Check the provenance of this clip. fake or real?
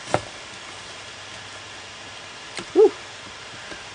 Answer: real